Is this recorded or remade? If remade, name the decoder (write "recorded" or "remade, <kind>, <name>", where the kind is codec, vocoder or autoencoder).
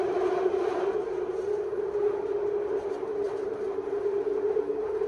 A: recorded